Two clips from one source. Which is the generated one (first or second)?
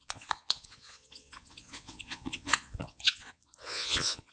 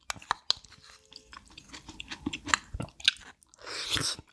first